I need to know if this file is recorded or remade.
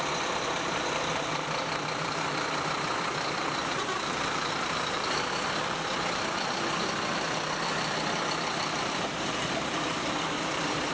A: remade